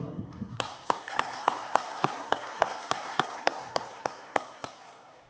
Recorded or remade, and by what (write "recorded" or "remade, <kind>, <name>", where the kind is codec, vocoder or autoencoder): remade, codec, SNAC